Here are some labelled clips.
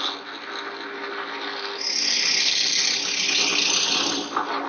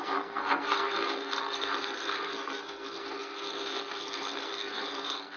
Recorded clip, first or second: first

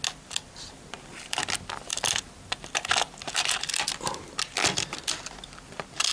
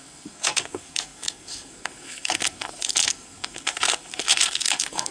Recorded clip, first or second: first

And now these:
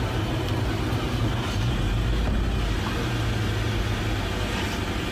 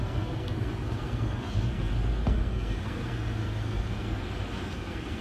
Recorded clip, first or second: first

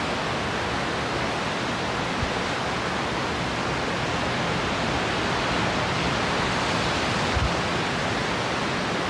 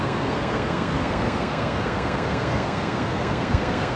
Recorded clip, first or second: first